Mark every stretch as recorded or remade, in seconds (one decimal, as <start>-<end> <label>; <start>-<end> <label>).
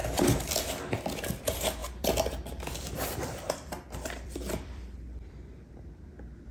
0.0-1.8 recorded; 1.8-5.7 remade; 5.7-6.5 recorded